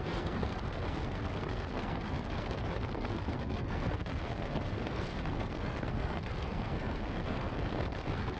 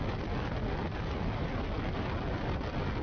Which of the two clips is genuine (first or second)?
second